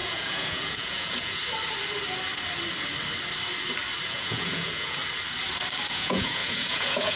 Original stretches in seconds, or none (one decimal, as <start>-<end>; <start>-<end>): 1.4-4.1; 5.0-5.9